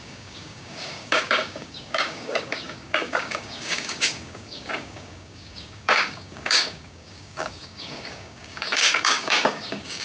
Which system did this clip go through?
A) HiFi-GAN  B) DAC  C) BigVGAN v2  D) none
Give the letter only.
B